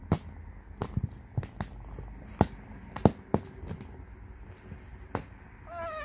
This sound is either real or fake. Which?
real